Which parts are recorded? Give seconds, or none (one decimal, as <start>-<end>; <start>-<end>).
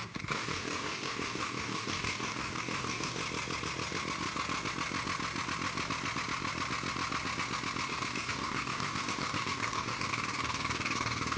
3.2-7.9